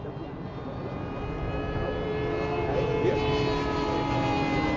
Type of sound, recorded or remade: recorded